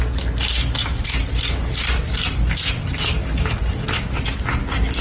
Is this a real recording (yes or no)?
yes